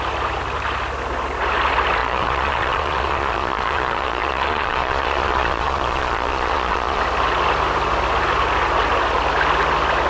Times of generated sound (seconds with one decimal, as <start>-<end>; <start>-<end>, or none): 2.0-7.0